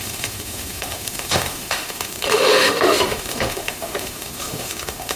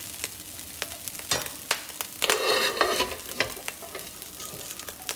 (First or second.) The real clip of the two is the second